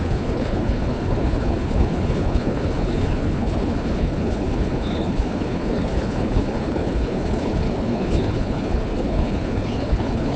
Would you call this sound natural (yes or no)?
no